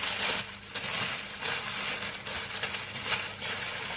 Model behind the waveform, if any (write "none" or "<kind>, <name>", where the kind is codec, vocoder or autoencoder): none